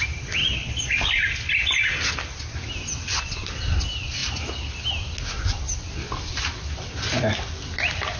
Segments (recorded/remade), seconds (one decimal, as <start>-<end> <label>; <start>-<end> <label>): 0.0-0.4 recorded; 0.4-0.9 remade; 0.9-8.2 recorded